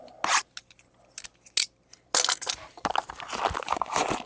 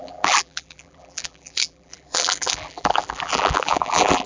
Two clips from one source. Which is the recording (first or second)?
first